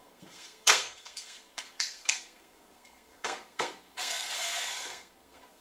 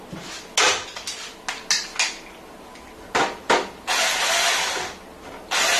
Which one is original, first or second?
second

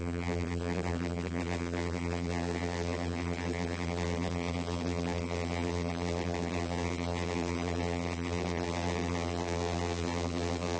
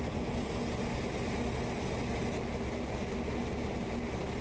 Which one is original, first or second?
second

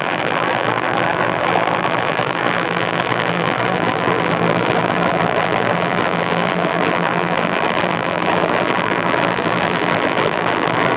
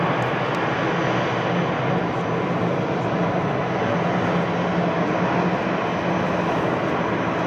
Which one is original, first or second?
second